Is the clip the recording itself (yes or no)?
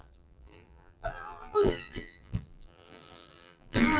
no